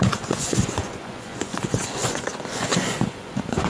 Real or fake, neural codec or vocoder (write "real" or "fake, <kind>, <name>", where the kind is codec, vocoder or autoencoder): fake, vocoder, Vocos